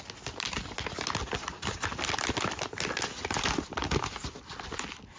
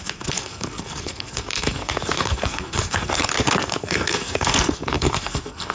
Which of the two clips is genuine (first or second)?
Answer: first